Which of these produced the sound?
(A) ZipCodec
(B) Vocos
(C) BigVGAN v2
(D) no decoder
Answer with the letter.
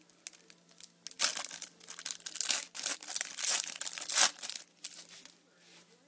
D